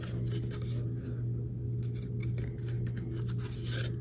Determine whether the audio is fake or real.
real